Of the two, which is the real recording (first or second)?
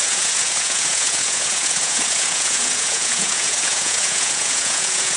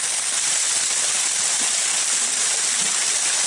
second